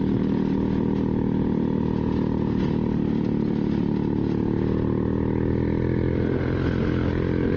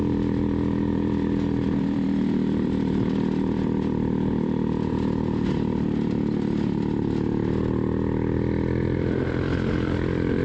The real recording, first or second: first